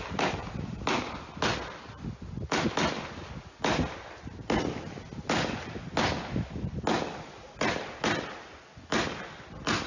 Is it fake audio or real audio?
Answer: real